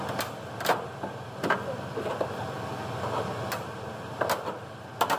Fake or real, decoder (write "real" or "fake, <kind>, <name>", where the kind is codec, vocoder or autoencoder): real